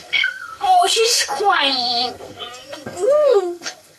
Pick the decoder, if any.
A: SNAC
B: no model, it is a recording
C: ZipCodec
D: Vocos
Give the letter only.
A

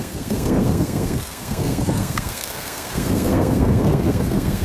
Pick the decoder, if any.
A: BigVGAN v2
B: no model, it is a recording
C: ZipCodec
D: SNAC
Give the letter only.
D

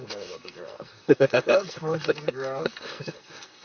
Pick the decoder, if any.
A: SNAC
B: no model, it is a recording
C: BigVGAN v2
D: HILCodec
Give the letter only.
A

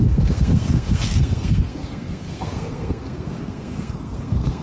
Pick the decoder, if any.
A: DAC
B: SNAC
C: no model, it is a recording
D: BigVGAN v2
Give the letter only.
B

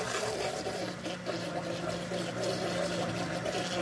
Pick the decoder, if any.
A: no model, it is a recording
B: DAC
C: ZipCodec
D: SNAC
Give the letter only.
A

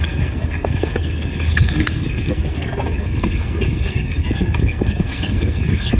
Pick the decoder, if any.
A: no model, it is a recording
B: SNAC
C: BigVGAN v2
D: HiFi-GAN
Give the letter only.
B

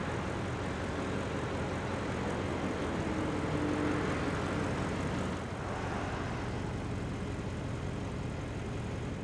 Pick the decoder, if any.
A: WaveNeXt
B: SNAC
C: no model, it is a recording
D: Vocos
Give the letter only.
C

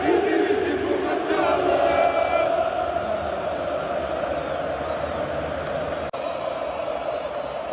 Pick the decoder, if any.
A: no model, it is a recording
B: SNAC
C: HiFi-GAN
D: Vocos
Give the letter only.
A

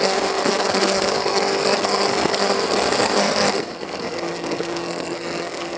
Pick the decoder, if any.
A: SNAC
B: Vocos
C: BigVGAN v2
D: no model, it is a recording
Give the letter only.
A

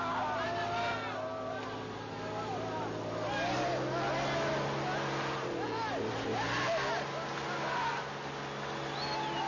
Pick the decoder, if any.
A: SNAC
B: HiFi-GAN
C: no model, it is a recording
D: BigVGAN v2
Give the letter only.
C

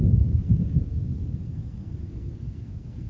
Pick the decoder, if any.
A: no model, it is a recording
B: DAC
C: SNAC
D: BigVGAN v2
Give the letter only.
C